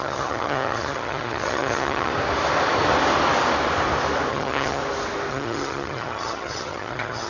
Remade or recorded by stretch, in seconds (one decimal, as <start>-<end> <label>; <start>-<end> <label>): 0.0-2.1 remade; 2.1-4.3 recorded; 4.3-4.8 remade; 4.8-5.3 recorded; 5.3-7.3 remade